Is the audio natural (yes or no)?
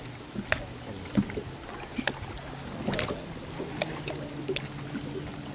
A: yes